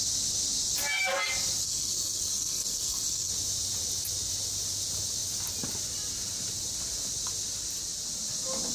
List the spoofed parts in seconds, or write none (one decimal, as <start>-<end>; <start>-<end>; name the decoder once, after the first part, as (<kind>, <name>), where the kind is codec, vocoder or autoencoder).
1.6-3.3 (codec, SNAC)